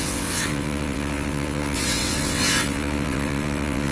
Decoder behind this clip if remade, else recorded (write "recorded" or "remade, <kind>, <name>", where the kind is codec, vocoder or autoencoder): remade, vocoder, WaveNeXt